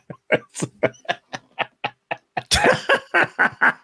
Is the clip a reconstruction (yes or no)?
no